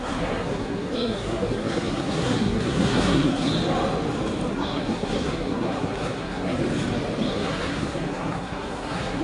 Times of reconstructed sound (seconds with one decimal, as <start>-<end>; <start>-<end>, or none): 0.0-3.5; 4.5-6.6; 7.3-9.2